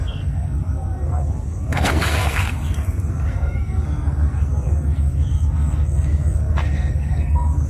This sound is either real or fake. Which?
fake